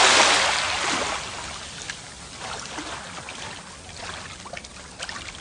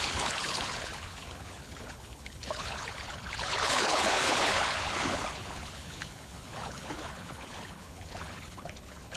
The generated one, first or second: second